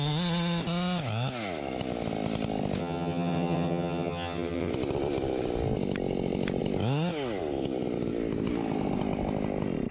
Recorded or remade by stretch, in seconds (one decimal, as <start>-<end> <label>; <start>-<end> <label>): 0.0-2.8 recorded; 2.8-4.7 remade; 4.7-9.9 recorded